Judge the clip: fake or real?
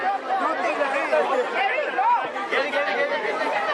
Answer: real